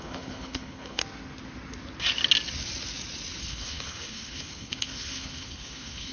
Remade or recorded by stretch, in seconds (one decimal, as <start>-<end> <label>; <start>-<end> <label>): 0.0-1.0 remade; 1.0-3.4 recorded; 3.4-6.1 remade